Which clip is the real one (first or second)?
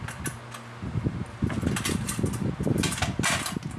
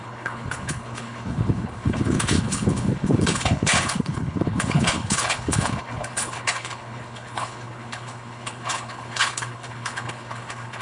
first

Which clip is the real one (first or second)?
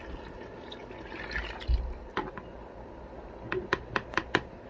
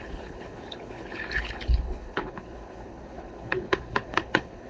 first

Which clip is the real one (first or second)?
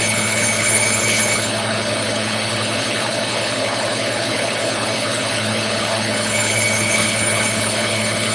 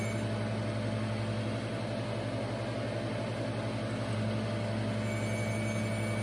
second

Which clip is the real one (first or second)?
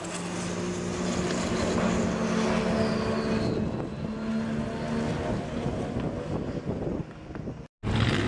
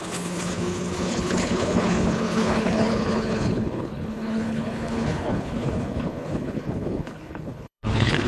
first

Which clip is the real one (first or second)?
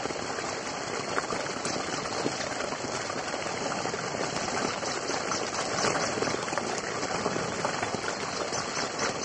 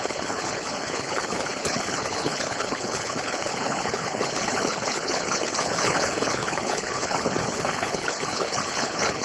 first